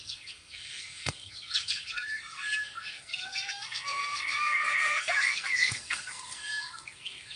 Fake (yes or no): yes